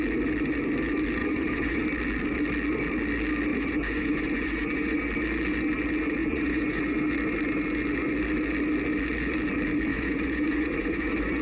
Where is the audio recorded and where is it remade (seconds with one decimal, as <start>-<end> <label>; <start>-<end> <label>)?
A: 0.0-1.2 recorded; 1.2-1.8 remade; 1.8-3.5 recorded; 3.5-5.0 remade; 5.0-6.2 recorded; 6.2-6.8 remade; 6.8-9.9 recorded; 9.9-11.4 remade